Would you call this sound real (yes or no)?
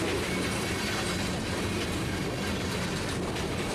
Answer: yes